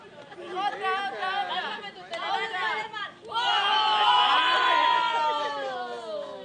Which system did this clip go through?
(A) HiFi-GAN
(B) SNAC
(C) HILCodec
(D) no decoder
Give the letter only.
D